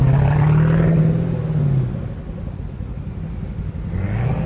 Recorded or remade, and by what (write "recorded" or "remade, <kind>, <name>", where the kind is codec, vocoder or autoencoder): recorded